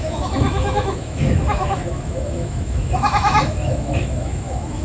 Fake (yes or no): yes